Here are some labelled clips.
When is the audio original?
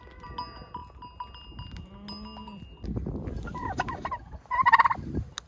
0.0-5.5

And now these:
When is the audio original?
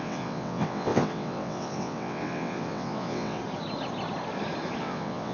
3.4-4.8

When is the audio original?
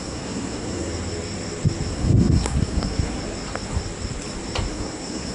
0.9-1.9; 3.2-4.7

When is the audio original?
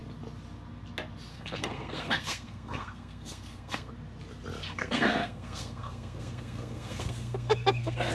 0.0-1.3; 3.9-4.6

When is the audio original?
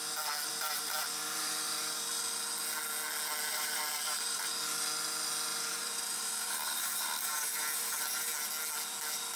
0.0-0.5; 2.1-3.5; 4.5-5.5; 8.3-9.4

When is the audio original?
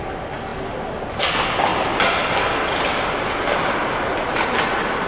0.0-5.1